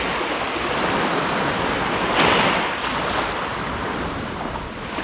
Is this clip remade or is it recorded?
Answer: recorded